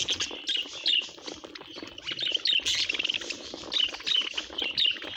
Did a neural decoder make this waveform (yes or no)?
no